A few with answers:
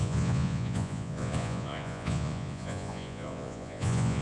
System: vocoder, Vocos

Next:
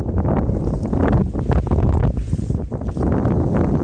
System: none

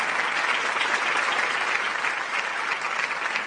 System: none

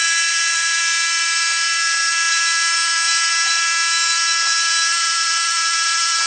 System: none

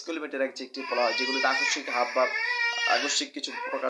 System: none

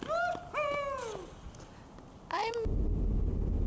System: none